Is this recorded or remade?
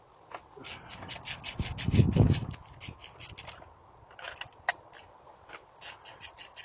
recorded